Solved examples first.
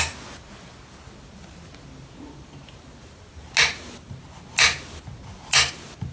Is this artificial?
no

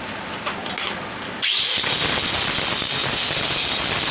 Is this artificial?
no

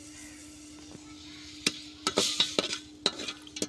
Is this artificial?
no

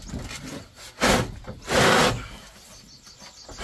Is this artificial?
no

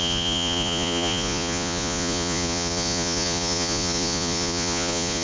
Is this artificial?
yes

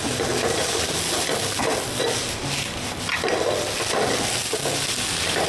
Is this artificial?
no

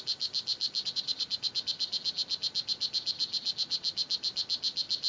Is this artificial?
no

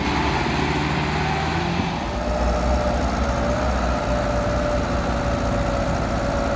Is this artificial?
no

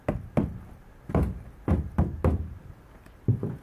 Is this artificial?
no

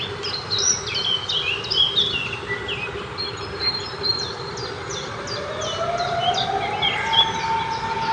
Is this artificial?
no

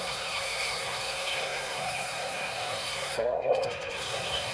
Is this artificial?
yes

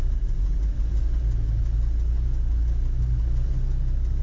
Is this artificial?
no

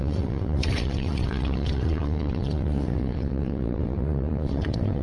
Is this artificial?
yes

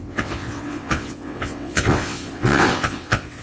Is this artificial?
yes